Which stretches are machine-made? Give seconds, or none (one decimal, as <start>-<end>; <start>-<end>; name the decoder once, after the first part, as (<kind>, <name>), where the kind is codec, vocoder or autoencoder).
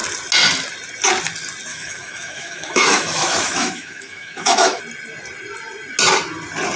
1.7-4.8 (autoencoder, DAC-VAE)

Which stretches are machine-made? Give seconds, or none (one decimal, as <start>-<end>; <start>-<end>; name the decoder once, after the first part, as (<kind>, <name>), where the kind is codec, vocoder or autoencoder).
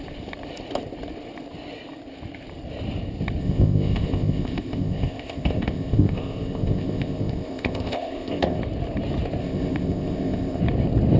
3.4-8.6 (codec, ZipCodec); 9.4-10.6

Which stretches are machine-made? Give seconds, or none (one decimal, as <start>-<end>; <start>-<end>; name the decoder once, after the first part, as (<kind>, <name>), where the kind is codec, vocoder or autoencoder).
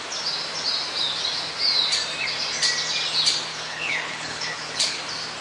3.5-5.0 (codec, HILCodec)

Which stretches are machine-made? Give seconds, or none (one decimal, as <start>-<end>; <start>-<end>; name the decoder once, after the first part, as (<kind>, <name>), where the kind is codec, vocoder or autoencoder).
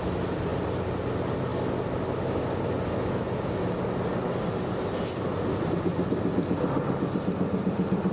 none